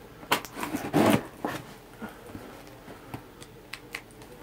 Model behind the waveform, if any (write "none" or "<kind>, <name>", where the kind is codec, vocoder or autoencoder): none